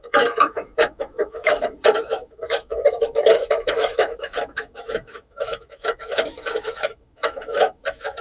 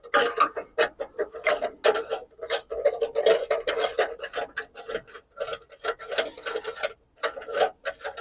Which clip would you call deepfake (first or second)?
first